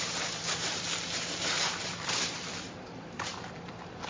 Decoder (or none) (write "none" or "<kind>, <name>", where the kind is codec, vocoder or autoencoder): vocoder, BigVGAN v2